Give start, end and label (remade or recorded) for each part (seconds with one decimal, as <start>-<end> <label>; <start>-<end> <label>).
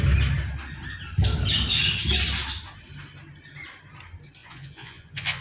0.0-4.4 recorded; 4.4-5.4 remade